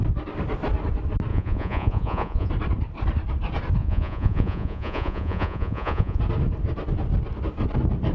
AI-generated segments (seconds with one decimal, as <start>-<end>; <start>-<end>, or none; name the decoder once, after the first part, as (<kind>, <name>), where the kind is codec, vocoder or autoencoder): 1.3-2.5 (vocoder, Vocos); 3.8-6.2